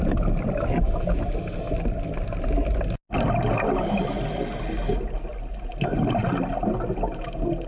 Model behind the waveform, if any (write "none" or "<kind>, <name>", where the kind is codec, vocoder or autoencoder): none